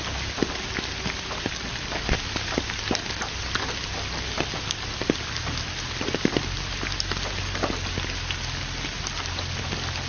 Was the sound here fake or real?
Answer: real